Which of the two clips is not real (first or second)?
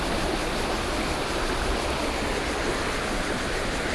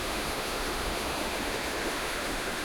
second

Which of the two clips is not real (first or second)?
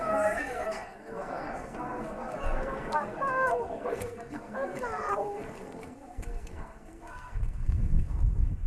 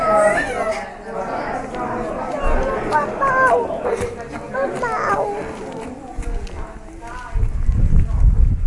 first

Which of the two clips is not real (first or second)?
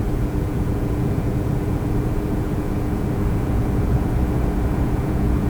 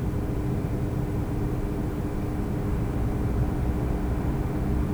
first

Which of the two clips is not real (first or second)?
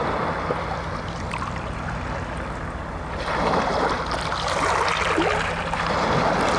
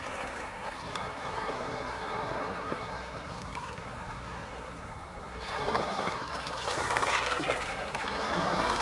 second